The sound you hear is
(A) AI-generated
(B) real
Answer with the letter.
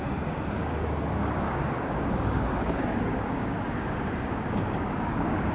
A